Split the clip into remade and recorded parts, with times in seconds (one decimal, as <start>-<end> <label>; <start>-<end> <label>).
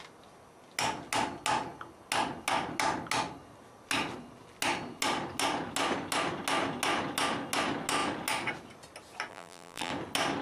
0.0-9.3 recorded; 9.3-9.9 remade; 9.9-10.4 recorded